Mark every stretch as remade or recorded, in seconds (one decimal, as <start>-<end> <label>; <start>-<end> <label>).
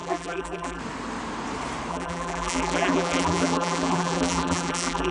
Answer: 0.0-0.8 remade; 0.8-1.9 recorded; 1.9-5.1 remade